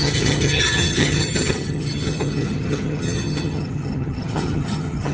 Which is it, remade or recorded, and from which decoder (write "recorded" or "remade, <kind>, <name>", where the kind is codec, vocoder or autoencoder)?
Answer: remade, vocoder, HiFi-GAN